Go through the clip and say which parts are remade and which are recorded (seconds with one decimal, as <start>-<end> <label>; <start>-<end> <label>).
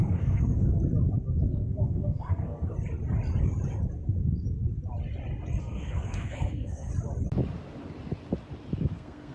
0.0-0.7 remade; 0.7-1.4 recorded; 1.4-2.7 remade; 2.7-5.6 recorded; 5.6-6.9 remade; 6.9-8.9 recorded; 8.9-9.3 remade